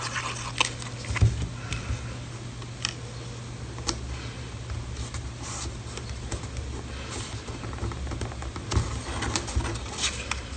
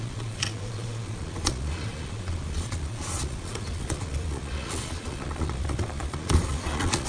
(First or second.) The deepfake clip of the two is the second